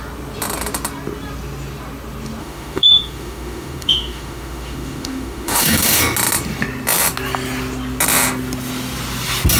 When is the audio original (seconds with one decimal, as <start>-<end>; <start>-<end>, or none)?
0.0-2.4; 6.0-9.6